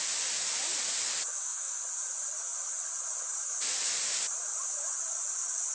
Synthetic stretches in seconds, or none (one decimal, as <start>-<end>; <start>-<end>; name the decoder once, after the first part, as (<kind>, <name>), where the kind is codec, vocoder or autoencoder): 1.3-1.8 (autoencoder, DAC-VAE)